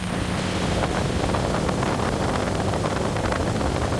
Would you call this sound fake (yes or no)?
no